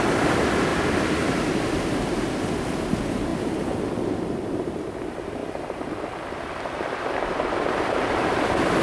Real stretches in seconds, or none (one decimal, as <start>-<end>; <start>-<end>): 0.0-0.7; 1.7-5.4